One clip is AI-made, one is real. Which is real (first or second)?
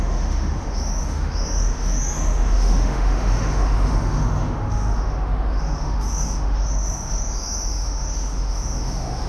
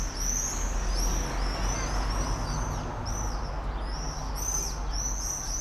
second